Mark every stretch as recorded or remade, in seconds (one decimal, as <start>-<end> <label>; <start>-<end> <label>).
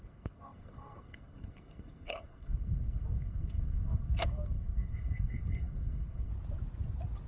0.0-6.3 remade; 6.3-7.3 recorded